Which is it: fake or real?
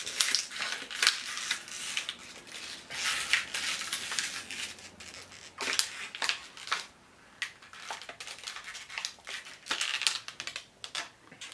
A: real